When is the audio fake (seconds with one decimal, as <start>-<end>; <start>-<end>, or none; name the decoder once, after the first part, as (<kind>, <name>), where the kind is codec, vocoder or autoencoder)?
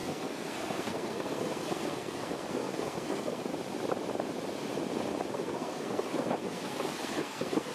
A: 0.0-3.5 (codec, SNAC); 5.3-7.7